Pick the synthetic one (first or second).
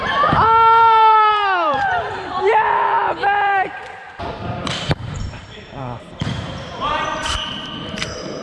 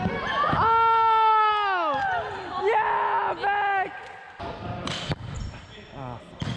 first